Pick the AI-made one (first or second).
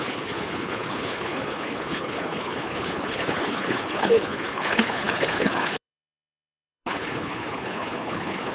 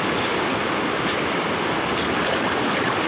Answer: first